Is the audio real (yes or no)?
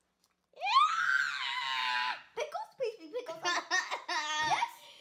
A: yes